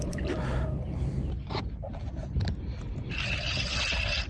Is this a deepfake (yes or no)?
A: no